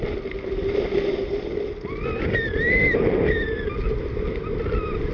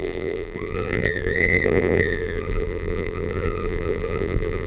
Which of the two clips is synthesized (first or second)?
second